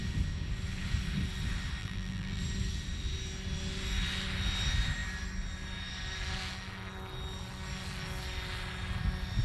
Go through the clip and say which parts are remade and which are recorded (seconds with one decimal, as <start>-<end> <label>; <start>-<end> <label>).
0.0-1.8 recorded; 1.8-2.4 remade; 2.4-9.4 recorded